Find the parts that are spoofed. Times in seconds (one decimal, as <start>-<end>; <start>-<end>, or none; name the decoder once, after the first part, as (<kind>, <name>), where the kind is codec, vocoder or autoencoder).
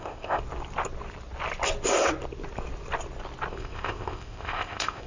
0.0-0.4 (codec, ZipCodec); 3.5-5.1